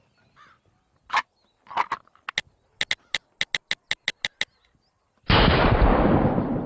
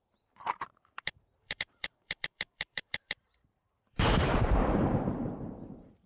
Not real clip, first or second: second